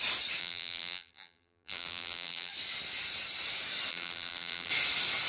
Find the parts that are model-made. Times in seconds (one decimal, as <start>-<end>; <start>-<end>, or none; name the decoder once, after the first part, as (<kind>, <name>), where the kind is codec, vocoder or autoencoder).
0.4-2.5 (vocoder, BigVGAN v2); 3.9-4.7